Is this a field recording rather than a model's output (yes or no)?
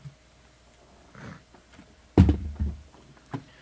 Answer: yes